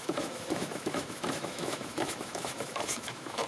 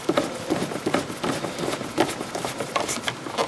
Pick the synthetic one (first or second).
first